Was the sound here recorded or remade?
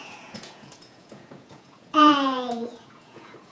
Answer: remade